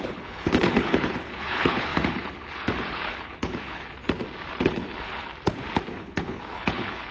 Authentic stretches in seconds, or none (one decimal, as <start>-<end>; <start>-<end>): 4.0-4.5; 5.3-5.9